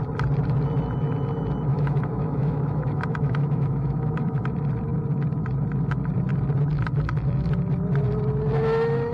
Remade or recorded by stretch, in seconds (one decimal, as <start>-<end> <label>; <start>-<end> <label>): 0.0-1.7 recorded; 1.7-4.5 remade; 4.5-9.1 recorded